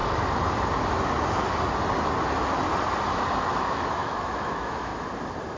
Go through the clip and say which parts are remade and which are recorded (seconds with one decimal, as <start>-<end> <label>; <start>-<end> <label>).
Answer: 0.0-3.4 recorded; 3.4-4.9 remade; 4.9-5.6 recorded